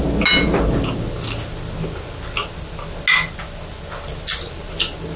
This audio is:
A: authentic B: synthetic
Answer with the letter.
A